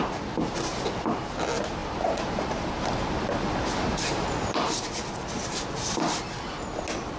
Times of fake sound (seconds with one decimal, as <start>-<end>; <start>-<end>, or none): 1.8-4.1